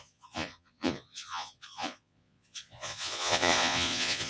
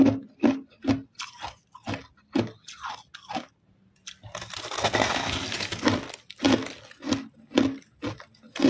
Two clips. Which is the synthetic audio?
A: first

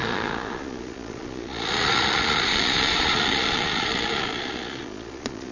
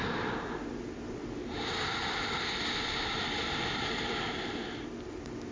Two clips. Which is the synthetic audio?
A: first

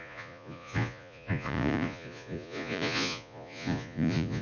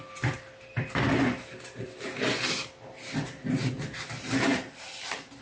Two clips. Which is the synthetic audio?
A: first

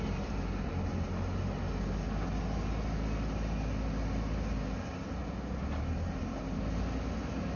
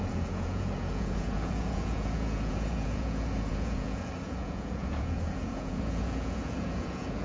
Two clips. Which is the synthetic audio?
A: second